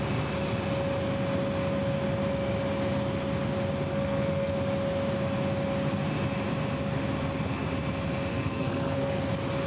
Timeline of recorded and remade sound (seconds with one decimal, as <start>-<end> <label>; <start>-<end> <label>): 0.0-3.9 recorded; 3.9-4.5 remade; 4.5-8.3 recorded; 8.3-9.2 remade; 9.2-9.7 recorded